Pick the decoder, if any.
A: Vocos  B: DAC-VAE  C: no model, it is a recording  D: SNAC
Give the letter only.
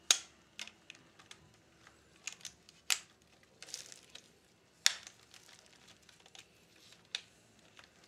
C